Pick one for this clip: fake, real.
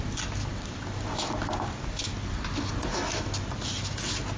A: real